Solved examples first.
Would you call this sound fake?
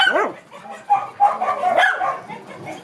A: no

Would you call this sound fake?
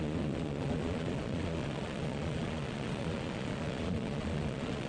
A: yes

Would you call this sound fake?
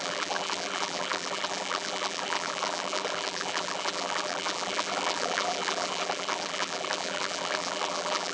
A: yes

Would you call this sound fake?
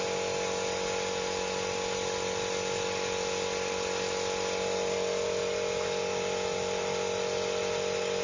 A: no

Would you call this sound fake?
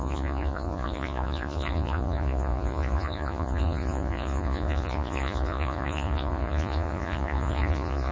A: yes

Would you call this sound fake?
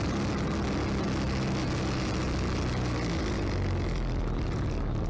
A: no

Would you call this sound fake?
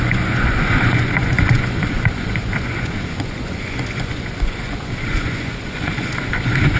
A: yes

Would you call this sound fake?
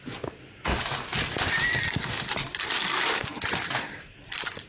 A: no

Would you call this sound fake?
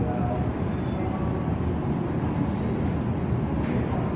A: no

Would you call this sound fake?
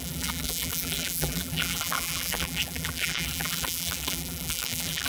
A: yes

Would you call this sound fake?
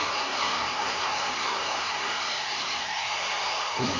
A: yes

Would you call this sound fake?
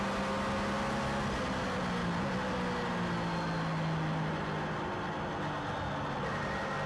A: no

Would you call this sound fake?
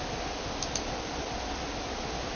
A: no